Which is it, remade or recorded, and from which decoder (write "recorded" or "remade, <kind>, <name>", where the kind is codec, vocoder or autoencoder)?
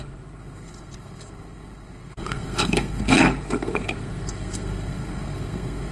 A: remade, codec, SNAC